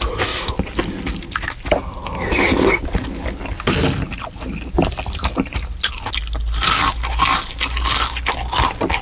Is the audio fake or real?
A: real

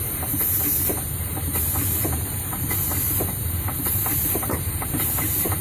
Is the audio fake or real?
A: fake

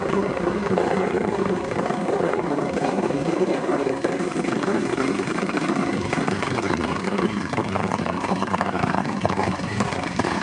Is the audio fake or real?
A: fake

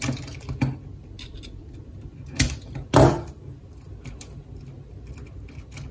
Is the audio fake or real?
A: real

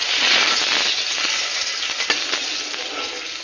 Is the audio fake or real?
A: real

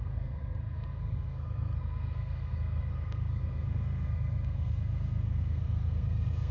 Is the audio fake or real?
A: fake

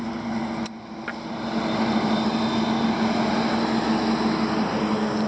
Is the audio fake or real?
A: real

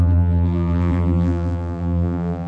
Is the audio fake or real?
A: fake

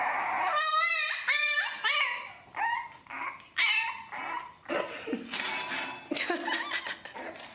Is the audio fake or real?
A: real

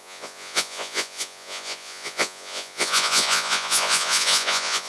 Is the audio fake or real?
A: fake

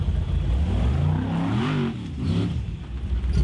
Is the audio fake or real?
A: real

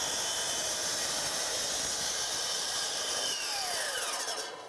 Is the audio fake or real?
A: fake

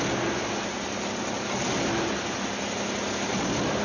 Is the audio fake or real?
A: real